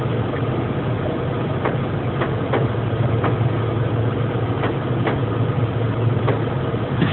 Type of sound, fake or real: real